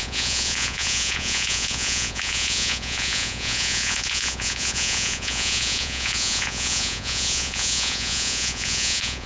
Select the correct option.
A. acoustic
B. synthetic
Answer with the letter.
B